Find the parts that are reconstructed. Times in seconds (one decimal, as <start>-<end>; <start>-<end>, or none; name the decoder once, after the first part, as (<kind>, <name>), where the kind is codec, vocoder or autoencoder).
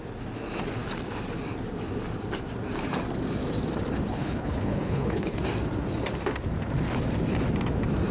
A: 4.1-5.4 (codec, HILCodec)